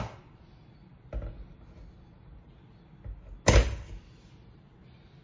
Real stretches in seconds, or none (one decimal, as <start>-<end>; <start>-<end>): 0.0-5.2